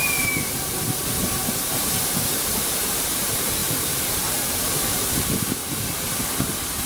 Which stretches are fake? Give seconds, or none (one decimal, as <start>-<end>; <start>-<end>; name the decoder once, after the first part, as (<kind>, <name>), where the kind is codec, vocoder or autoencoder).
0.0-5.6 (vocoder, BigVGAN v2)